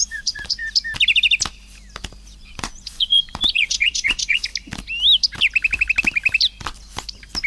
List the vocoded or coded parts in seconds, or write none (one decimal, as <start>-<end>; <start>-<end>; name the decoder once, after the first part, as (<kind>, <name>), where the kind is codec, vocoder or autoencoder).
0.0-0.6 (vocoder, Vocos); 2.4-4.5